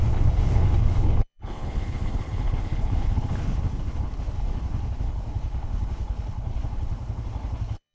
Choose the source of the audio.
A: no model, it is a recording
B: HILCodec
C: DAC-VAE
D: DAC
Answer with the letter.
B